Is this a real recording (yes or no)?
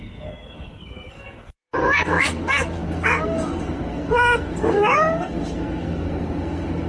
no